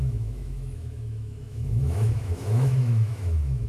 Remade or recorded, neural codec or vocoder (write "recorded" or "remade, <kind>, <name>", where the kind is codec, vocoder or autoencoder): remade, autoencoder, DAC-VAE